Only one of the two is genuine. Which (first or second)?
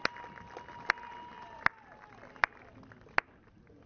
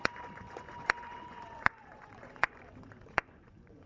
first